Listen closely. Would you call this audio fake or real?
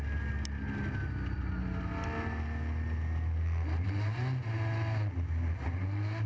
real